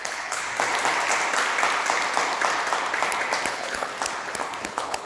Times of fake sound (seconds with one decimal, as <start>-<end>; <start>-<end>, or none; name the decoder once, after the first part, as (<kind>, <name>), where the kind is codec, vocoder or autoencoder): 0.0-0.4 (codec, HILCodec); 3.5-3.9; 4.6-5.1